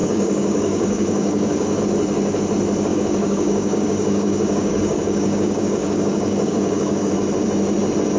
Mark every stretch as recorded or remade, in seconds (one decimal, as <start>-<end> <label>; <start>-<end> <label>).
0.0-1.8 remade; 1.8-2.9 recorded; 2.9-7.1 remade; 7.1-8.2 recorded

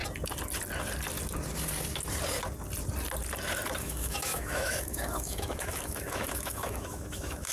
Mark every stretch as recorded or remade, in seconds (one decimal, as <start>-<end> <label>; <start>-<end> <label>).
0.0-3.8 recorded; 3.8-7.5 remade

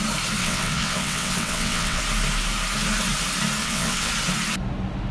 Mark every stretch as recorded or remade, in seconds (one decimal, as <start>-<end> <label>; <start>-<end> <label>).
0.0-0.4 recorded; 0.4-2.0 remade; 2.0-3.6 recorded; 3.6-4.1 remade; 4.1-5.1 recorded

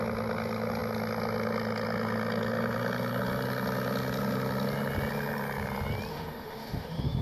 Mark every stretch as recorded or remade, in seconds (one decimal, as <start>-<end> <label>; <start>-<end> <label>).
0.0-6.1 recorded; 6.1-7.2 remade

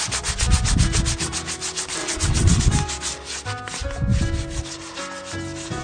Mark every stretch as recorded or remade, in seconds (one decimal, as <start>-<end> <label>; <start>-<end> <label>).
0.0-2.0 recorded; 2.0-2.6 remade; 2.6-5.8 recorded